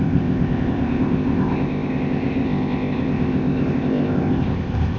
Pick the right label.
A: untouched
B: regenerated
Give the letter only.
B